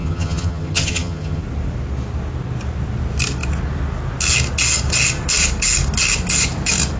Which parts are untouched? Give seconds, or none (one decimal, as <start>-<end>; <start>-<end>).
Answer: 1.4-7.0